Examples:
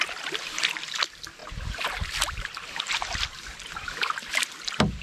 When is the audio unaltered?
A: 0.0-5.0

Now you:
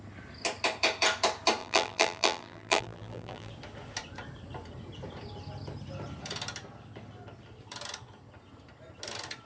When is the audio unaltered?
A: 0.0-1.6; 3.5-9.5

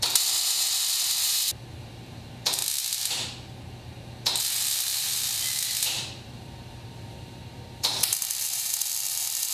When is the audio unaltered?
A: 2.6-4.4

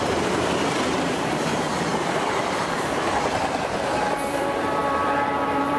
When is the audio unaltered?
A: 1.7-2.4

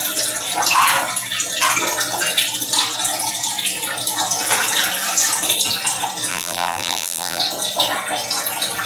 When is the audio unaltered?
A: 0.0-6.3; 7.4-8.9